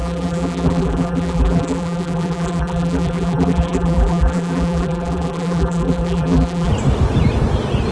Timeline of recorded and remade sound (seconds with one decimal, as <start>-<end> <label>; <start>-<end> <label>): 0.0-6.7 remade; 6.7-7.9 recorded